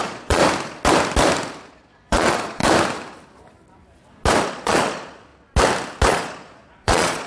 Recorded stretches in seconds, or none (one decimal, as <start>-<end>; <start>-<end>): 0.4-1.7; 2.6-4.4; 5.3-6.1